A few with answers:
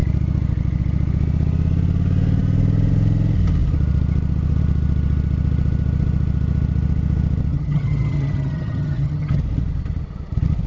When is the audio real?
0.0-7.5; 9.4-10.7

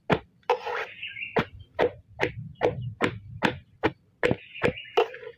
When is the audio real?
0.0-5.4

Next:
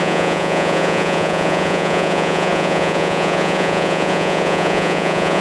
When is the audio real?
none